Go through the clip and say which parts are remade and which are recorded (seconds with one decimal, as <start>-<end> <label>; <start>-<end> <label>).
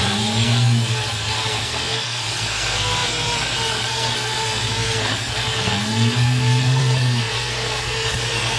0.0-8.6 remade